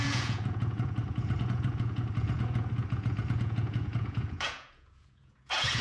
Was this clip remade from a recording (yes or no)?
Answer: yes